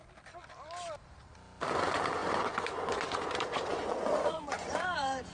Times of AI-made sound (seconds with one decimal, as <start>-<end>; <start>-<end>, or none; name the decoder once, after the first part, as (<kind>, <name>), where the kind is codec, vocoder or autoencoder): 1.6-5.3 (vocoder, Vocos)